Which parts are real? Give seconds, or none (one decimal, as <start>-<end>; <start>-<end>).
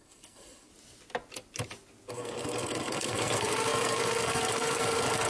0.7-2.1